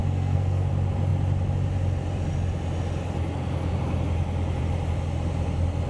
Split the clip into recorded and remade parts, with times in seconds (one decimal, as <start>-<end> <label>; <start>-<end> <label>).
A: 0.0-0.7 remade; 0.7-5.9 recorded